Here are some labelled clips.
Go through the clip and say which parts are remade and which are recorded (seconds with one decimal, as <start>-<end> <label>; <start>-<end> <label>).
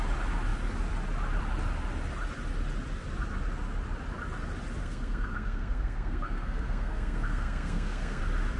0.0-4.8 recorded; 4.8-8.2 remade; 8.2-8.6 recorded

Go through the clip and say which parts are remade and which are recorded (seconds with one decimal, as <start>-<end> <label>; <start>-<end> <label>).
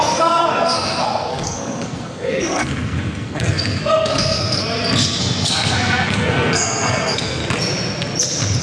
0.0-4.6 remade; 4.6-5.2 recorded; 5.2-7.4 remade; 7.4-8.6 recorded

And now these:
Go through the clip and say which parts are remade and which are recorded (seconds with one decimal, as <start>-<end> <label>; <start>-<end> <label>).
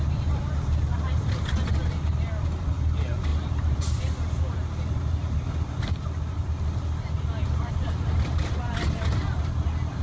0.0-10.0 recorded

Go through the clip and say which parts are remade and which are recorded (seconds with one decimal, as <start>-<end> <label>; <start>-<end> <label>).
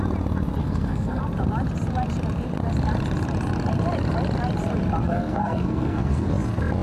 0.0-0.6 recorded; 0.6-1.2 remade; 1.2-5.0 recorded; 5.0-6.3 remade; 6.3-6.8 recorded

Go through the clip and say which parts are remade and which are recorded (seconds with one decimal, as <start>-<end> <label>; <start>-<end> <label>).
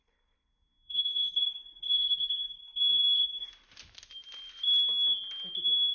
0.0-3.5 remade; 3.5-5.9 recorded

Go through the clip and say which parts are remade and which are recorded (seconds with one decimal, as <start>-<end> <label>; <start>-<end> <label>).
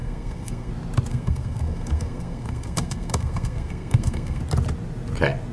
0.0-0.7 remade; 0.7-1.1 recorded; 1.1-4.4 remade; 4.4-5.5 recorded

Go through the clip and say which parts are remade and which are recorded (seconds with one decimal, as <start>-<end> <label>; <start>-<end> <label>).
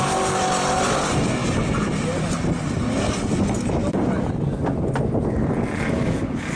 0.0-6.6 recorded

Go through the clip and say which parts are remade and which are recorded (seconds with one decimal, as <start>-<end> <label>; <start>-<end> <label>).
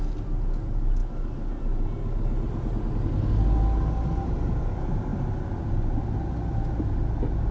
0.0-7.5 recorded